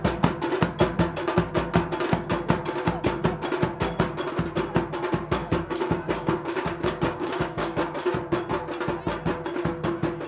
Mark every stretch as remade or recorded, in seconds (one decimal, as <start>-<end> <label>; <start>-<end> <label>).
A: 0.0-5.4 recorded; 5.4-8.1 remade; 8.1-10.3 recorded